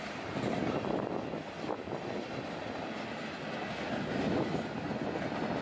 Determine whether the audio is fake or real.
real